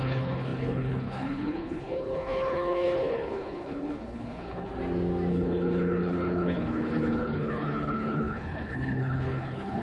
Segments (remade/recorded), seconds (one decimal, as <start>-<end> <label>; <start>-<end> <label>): 0.0-4.7 remade; 4.7-5.3 recorded; 5.3-9.8 remade